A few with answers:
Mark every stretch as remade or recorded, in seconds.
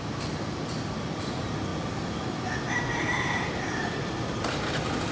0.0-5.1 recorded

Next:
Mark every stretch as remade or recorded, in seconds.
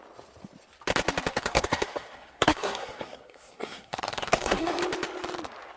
0.0-1.3 recorded; 1.3-4.8 remade; 4.8-5.8 recorded